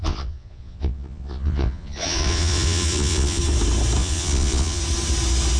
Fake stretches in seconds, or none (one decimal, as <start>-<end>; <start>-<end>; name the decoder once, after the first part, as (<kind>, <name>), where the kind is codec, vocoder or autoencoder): 0.0-3.4 (vocoder, Vocos); 4.0-4.8